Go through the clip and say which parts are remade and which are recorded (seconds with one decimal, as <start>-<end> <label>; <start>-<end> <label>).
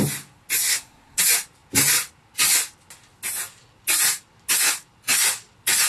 0.0-0.7 recorded; 0.7-1.2 remade; 1.2-5.9 recorded